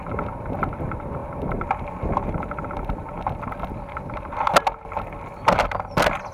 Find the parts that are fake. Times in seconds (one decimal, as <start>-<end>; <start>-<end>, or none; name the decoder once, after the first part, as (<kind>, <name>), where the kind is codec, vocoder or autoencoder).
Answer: none